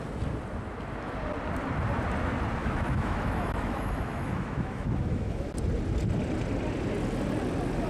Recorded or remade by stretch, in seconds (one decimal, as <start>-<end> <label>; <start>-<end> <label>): 0.0-2.6 recorded; 2.6-5.5 remade; 5.5-7.9 recorded